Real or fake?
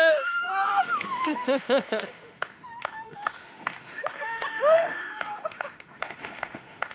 fake